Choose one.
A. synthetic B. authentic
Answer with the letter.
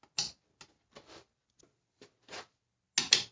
B